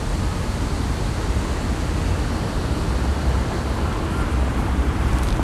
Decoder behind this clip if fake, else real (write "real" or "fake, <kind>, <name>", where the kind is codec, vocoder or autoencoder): real